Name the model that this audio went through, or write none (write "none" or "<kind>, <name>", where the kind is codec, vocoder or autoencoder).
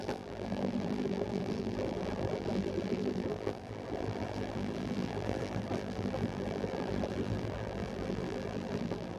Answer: vocoder, BigVGAN v2